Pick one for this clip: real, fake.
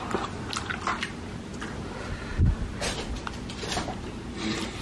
real